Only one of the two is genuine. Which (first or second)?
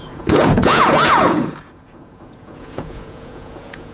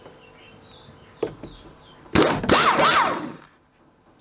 second